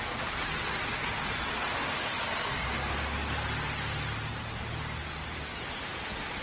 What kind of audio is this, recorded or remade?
recorded